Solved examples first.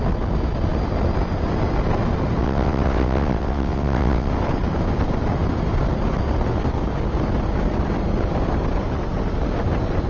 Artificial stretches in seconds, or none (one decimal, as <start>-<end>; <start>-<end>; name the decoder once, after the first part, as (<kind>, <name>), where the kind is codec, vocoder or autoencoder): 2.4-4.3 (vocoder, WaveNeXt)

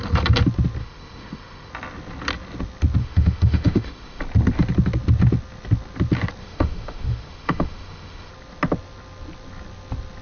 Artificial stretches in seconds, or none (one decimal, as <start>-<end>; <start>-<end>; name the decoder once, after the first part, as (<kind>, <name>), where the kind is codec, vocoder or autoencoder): 0.8-1.7 (autoencoder, DAC-VAE); 3.0-4.2; 6.4-8.3

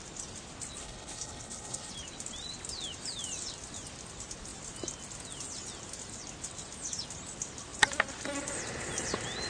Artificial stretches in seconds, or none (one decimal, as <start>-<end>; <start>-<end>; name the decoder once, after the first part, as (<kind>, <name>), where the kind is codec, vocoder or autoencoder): 0.8-1.9 (codec, HILCodec)